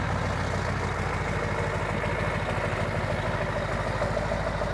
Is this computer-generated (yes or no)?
no